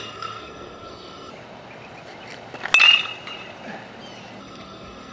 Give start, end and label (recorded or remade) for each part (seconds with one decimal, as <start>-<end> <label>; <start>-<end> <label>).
0.0-1.3 remade; 1.3-4.4 recorded; 4.4-5.1 remade